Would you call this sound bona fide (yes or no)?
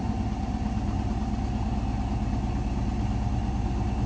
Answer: yes